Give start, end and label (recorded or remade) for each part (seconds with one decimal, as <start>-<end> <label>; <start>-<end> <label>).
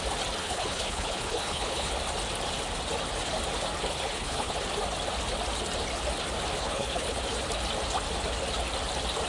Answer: 0.0-0.4 recorded; 0.4-1.9 remade; 1.9-3.9 recorded; 3.9-4.5 remade; 4.5-6.6 recorded; 6.6-7.2 remade; 7.2-9.3 recorded